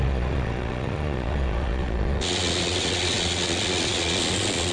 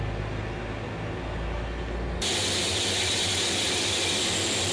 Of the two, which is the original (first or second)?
second